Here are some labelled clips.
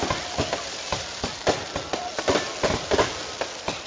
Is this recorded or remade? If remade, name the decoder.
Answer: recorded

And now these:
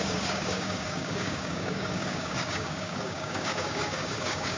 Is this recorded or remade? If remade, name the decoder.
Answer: remade, codec, DAC